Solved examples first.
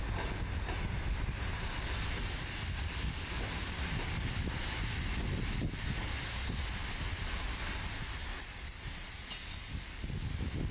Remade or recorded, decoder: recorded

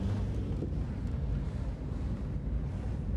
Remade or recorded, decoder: recorded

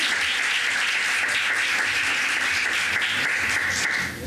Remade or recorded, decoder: recorded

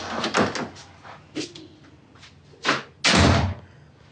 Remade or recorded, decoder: recorded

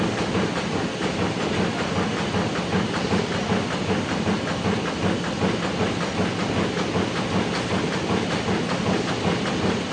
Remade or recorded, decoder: recorded